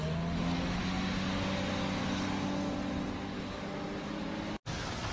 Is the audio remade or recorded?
recorded